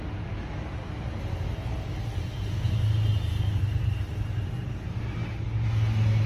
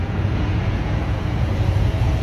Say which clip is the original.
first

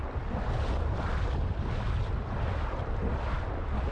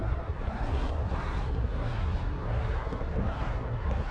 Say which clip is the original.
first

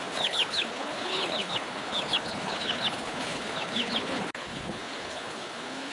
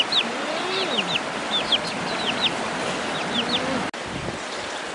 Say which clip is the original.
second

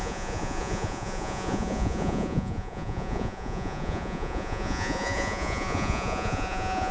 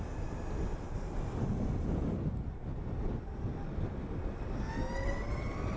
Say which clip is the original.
second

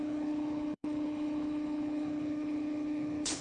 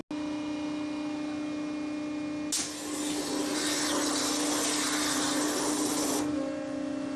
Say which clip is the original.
second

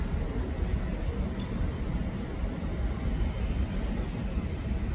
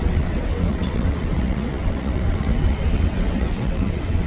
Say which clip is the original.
first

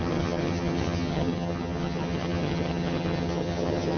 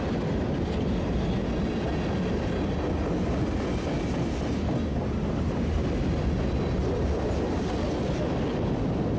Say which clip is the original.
second